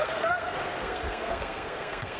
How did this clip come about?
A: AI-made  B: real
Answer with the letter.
A